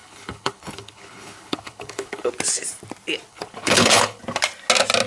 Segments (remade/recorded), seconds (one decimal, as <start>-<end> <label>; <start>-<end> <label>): 0.0-2.3 remade; 2.3-3.3 recorded; 3.3-4.2 remade; 4.2-5.1 recorded